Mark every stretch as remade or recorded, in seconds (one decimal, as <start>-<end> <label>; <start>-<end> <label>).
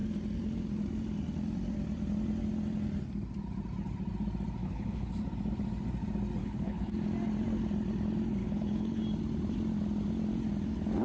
0.0-4.6 recorded; 4.6-5.1 remade; 5.1-6.4 recorded; 6.4-6.9 remade; 6.9-8.4 recorded; 8.4-9.0 remade; 9.0-11.0 recorded